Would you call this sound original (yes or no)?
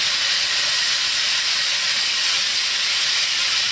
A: no